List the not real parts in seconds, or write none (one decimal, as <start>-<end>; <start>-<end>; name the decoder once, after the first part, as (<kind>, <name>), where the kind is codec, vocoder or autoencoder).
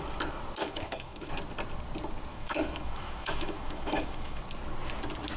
0.6-1.3 (autoencoder, DAC-VAE); 2.3-4.4